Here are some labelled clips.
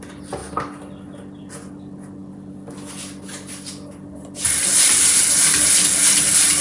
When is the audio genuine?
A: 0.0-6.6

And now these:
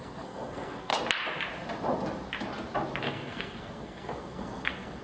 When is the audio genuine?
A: 0.9-3.0

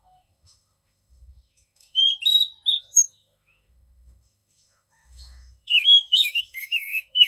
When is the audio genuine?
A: 2.0-2.8

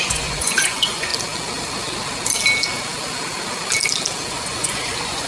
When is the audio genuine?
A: 1.1-4.3

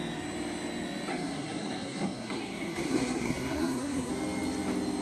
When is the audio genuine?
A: 0.0-1.1; 4.1-5.0

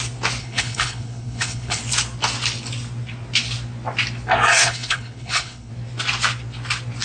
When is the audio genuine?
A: 0.0-0.4; 1.8-4.6; 5.7-7.0